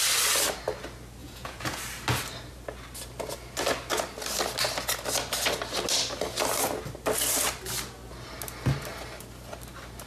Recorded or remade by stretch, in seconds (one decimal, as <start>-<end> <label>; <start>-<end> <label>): 0.0-1.2 recorded; 1.2-1.8 remade; 1.8-10.1 recorded